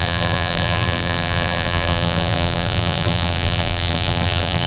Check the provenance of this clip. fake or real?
fake